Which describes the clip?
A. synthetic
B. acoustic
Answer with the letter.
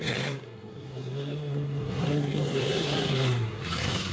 A